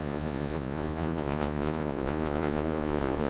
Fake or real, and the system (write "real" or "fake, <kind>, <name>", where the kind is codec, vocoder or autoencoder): fake, vocoder, Vocos